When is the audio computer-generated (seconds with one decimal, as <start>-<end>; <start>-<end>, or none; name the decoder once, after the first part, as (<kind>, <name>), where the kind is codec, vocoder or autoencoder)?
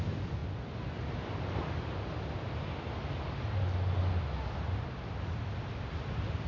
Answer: none